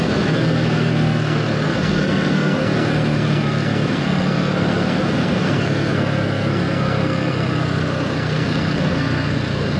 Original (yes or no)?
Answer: no